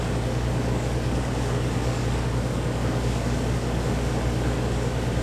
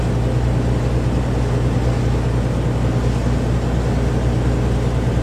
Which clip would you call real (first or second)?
second